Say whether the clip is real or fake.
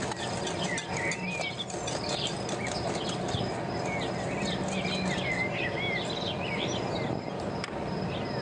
real